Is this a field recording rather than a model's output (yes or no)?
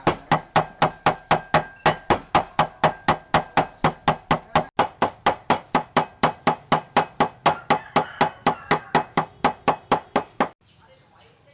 yes